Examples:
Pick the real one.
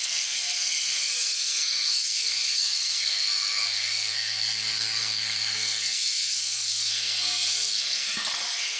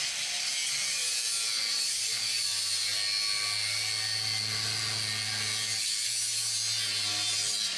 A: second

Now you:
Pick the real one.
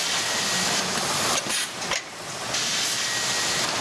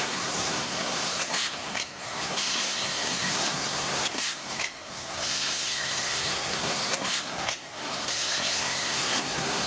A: first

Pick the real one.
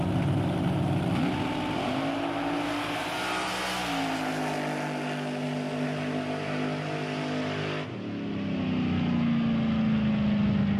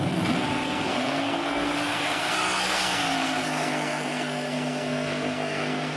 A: first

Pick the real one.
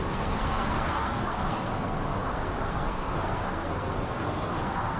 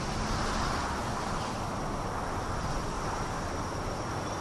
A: second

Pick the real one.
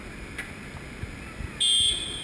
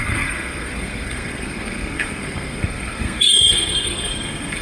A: first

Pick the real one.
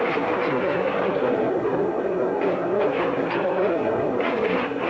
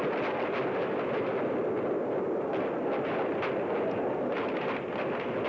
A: second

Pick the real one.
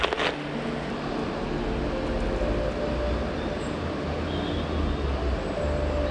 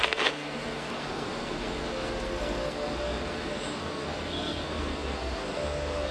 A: first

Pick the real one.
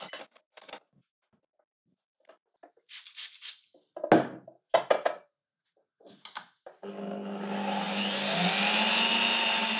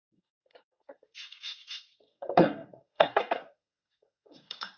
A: first